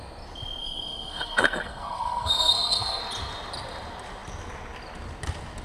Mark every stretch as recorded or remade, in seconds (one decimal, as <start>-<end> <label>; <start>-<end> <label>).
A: 0.0-0.6 recorded; 0.6-3.0 remade; 3.0-5.6 recorded